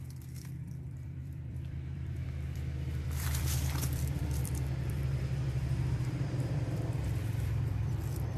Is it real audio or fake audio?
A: fake